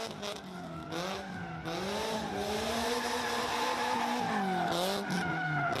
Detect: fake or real real